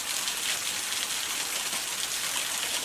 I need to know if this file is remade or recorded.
recorded